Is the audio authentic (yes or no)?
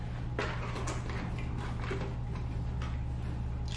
yes